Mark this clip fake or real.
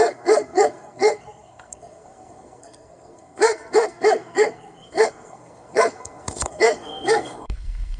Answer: fake